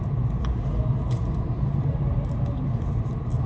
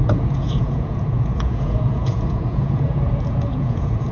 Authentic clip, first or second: first